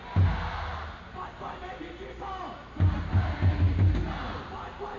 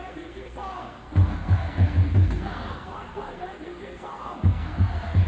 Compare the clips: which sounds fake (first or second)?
second